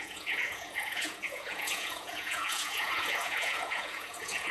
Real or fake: fake